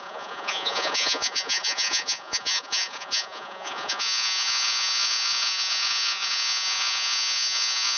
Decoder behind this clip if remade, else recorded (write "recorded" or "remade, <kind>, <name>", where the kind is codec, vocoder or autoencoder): remade, vocoder, Vocos